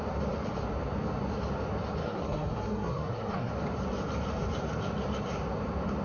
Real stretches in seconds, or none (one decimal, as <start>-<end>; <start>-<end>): 0.0-2.0; 3.5-6.0